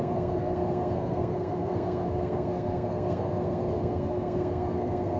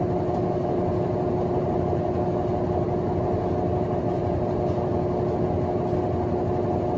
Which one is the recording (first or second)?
second